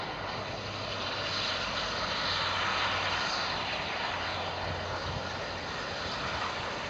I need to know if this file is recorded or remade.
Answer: recorded